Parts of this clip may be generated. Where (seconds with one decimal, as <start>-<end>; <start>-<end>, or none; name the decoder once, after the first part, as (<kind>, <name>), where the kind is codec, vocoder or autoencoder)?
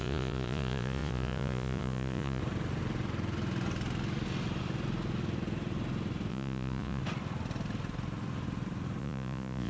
0.0-2.4 (vocoder, Vocos); 6.3-7.0; 9.0-9.7